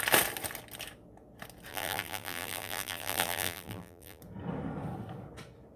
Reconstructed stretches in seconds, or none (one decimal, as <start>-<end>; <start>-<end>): 1.7-4.2

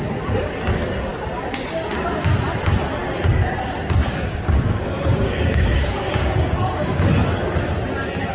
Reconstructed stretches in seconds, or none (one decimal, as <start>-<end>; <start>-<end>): 4.0-7.0

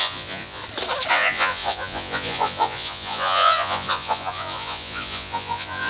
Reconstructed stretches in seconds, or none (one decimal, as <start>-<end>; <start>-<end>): 0.0-0.6; 1.1-5.9

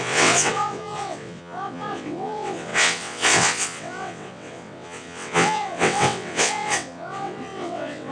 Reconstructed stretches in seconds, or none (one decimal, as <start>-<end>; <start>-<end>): 0.0-8.1

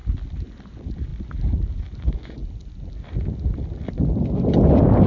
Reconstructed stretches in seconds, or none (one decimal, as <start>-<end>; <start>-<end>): 0.7-1.1; 2.0-2.4

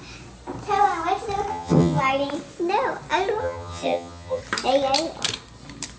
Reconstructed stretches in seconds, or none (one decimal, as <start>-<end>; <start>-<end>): 1.5-2.0; 3.4-4.4